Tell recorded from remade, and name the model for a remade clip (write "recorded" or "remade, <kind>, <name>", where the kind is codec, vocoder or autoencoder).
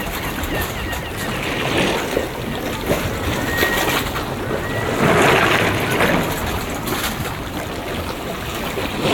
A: recorded